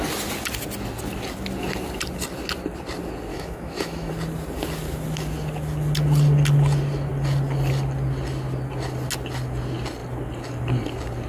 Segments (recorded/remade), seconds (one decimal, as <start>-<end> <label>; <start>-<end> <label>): 0.0-3.3 recorded; 3.3-4.1 remade; 4.1-11.3 recorded